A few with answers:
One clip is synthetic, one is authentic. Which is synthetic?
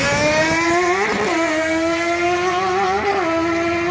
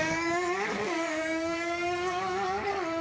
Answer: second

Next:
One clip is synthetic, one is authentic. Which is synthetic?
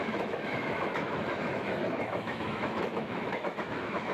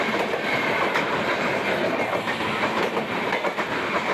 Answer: first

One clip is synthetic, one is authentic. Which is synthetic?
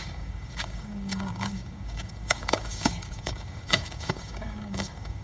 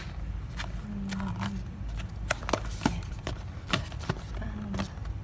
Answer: first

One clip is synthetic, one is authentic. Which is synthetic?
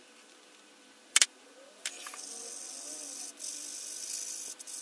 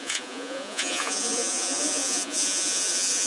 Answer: second